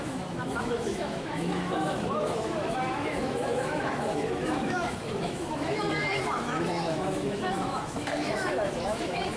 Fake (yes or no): yes